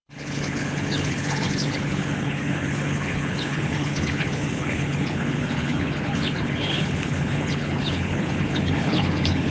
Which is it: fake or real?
fake